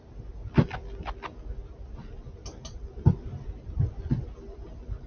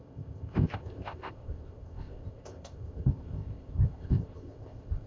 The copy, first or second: second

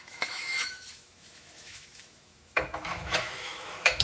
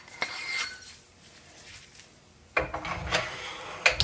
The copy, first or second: first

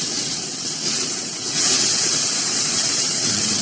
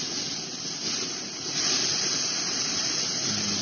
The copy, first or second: first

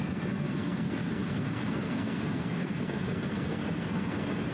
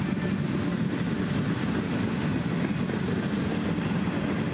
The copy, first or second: first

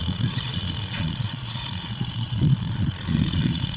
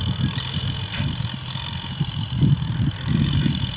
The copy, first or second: first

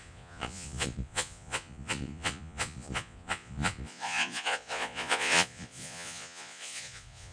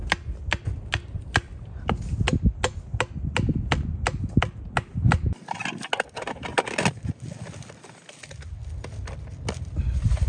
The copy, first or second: first